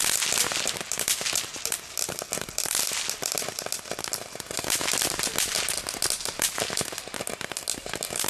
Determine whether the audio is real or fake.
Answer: real